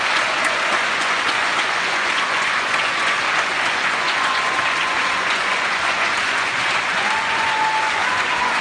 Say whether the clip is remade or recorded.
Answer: remade